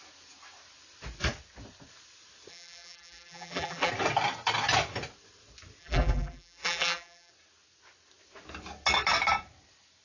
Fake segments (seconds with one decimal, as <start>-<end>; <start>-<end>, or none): 2.5-3.9; 5.8-7.3